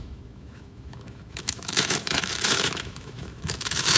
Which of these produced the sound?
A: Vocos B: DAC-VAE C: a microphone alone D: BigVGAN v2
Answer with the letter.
B